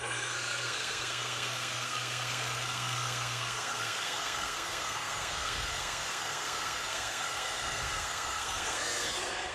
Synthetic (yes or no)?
yes